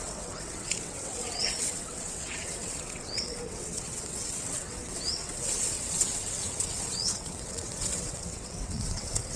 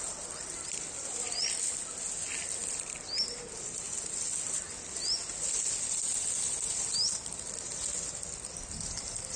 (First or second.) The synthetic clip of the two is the first